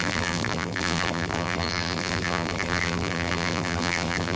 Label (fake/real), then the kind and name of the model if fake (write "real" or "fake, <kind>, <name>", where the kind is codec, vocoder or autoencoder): fake, vocoder, BigVGAN v2